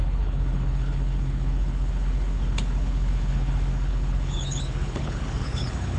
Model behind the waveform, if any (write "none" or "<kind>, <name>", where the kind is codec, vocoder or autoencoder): codec, HILCodec